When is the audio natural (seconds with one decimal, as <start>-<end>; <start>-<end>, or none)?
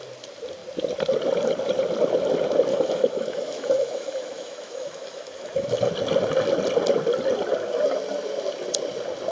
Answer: 0.0-2.7; 5.9-9.3